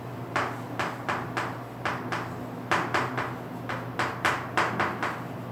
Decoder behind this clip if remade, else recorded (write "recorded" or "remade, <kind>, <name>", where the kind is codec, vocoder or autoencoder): remade, vocoder, BigVGAN v2